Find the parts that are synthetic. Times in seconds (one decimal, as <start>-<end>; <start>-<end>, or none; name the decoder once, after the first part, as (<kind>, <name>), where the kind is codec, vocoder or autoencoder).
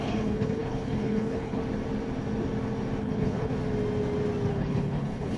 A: 0.0-1.6 (codec, HILCodec); 3.0-3.5; 4.5-5.4